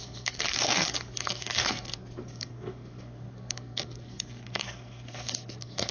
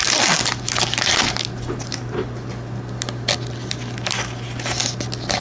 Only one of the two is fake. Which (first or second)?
first